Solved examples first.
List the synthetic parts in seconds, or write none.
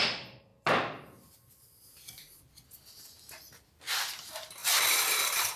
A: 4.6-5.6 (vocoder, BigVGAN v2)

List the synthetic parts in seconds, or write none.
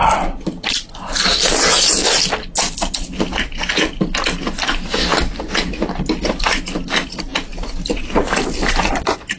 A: 7.5-9.4 (vocoder, BigVGAN v2)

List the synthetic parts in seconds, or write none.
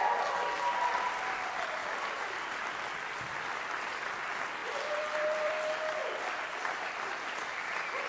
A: 4.6-5.5 (vocoder, BigVGAN v2); 6.0-7.1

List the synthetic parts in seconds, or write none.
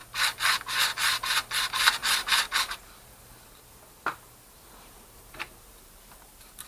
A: 1.6-2.0 (vocoder, BigVGAN v2); 2.6-6.7